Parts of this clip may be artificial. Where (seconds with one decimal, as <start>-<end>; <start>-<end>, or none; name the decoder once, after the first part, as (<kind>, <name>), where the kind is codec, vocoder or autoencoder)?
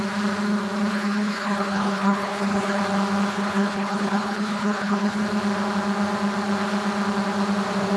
0.9-2.8 (codec, HILCodec); 3.3-5.2